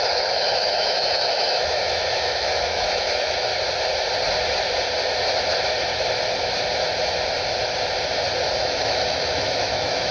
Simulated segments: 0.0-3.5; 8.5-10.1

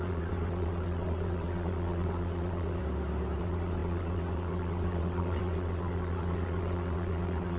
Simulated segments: 0.0-2.8; 3.4-7.6

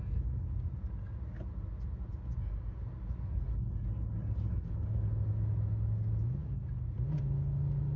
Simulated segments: none

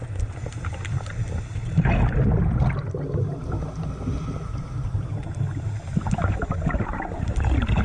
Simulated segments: none

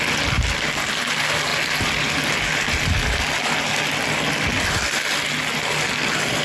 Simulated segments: none

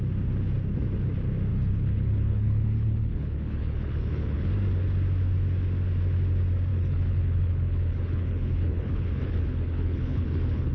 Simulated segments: 1.5-4.5; 6.7-10.7

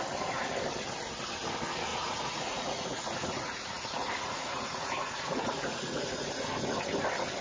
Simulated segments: 1.9-6.3

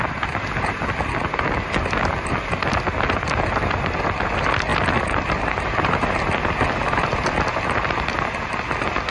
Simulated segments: none